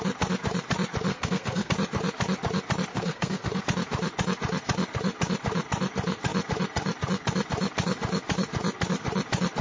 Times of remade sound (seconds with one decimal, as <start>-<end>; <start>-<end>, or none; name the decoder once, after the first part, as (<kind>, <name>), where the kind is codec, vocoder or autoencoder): 1.1-1.7 (codec, SNAC); 2.9-3.6